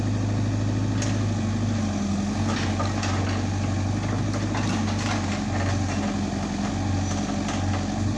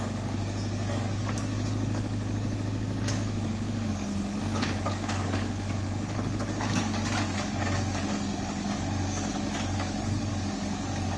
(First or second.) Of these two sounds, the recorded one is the first